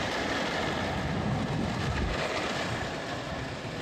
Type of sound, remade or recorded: recorded